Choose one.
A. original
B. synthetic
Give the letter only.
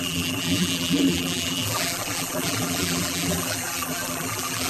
B